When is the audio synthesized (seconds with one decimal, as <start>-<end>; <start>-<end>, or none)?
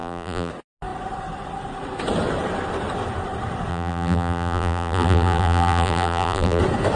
0.0-0.5; 3.7-6.6